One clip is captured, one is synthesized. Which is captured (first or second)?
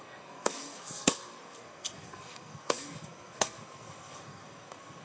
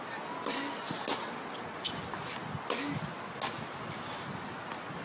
second